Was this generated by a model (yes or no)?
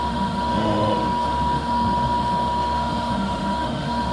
yes